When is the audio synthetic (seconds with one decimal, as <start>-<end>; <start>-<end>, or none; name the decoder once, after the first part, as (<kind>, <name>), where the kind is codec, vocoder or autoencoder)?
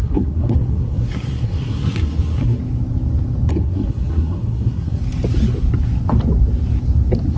0.0-2.6 (codec, SNAC); 3.5-5.0